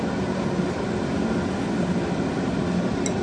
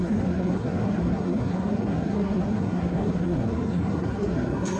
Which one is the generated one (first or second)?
second